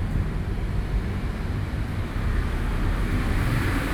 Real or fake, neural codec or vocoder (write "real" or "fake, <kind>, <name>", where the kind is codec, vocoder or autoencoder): fake, vocoder, BigVGAN v2